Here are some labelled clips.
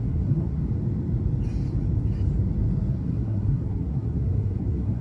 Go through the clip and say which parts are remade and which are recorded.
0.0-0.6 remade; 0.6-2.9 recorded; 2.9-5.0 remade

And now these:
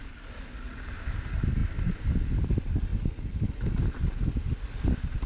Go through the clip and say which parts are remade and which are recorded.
0.0-5.3 recorded

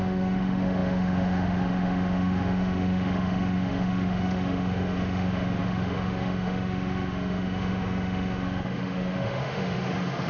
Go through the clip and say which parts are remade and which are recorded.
0.0-10.3 remade

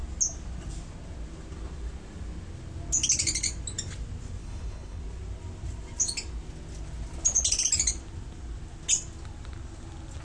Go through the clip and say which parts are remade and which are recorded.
0.0-4.4 recorded; 4.4-5.0 remade; 5.0-10.2 recorded